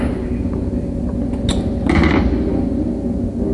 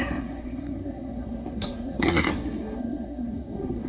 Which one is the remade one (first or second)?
second